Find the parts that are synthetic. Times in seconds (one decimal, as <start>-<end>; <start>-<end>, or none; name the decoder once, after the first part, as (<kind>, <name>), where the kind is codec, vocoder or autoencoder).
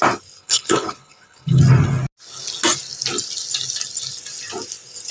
0.4-1.6 (codec, HILCodec)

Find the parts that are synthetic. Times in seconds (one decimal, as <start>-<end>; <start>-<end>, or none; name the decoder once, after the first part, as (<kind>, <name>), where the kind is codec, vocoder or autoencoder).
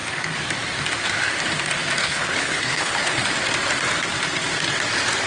2.0-3.3 (codec, HILCodec)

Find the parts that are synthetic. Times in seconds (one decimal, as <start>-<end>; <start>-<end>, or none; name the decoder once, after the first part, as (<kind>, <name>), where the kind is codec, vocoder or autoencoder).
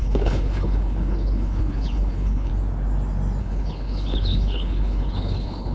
0.0-2.5 (codec, HILCodec); 3.4-5.7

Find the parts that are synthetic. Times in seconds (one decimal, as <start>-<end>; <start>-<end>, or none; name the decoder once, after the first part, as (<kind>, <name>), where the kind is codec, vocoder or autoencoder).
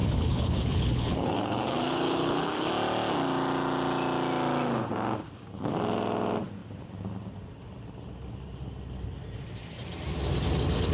0.0-2.7 (codec, HILCodec)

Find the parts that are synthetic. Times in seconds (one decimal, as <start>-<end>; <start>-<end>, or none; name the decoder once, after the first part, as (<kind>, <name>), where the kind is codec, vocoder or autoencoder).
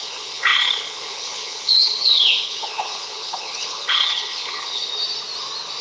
0.0-4.9 (codec, HILCodec)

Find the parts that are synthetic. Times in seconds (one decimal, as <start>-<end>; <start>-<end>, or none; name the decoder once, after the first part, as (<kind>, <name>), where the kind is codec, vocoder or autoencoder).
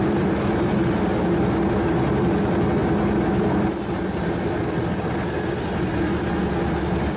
none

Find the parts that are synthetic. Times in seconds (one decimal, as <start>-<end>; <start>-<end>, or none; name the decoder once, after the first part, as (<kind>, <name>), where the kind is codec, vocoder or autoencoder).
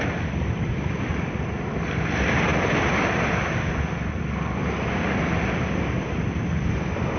none